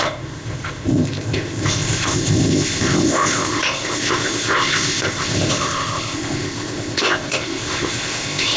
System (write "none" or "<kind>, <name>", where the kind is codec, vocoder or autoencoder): codec, ZipCodec